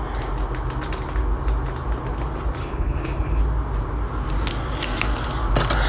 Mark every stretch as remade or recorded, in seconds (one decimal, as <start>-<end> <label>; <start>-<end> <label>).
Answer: 0.0-2.6 recorded; 2.6-3.4 remade; 3.4-5.9 recorded